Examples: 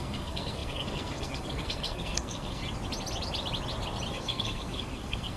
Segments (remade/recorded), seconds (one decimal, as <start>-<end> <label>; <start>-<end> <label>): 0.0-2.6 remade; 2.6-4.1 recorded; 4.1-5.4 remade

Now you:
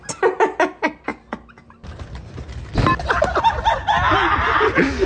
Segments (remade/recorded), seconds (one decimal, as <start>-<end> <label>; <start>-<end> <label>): 0.0-5.1 recorded

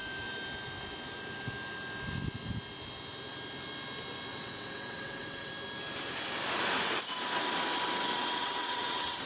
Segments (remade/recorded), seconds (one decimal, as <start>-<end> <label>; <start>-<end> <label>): 0.0-4.3 recorded; 4.3-5.5 remade; 5.5-8.1 recorded; 8.1-9.3 remade

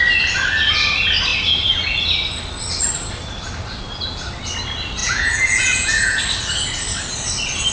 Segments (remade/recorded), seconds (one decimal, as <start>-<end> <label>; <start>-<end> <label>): 0.0-5.0 recorded; 5.0-6.2 remade; 6.2-7.7 recorded

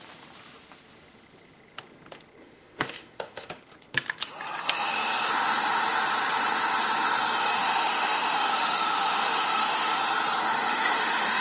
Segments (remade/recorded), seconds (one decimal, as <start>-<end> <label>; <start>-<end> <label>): 0.0-2.4 recorded; 2.4-3.5 remade; 3.5-7.6 recorded; 7.6-10.0 remade; 10.0-10.7 recorded; 10.7-11.4 remade

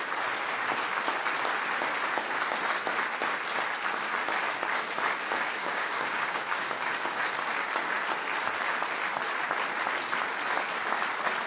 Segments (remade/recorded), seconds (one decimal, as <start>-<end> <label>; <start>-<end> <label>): 0.0-5.6 recorded; 5.6-7.2 remade; 7.2-11.5 recorded

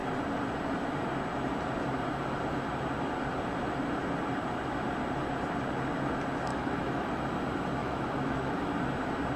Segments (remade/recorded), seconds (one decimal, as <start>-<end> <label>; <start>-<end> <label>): 0.0-6.5 recorded; 6.5-7.2 remade; 7.2-7.8 recorded; 7.8-8.7 remade; 8.7-9.4 recorded